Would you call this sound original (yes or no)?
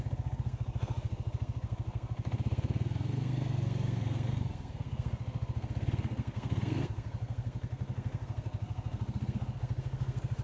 no